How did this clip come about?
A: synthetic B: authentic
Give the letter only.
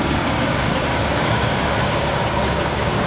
A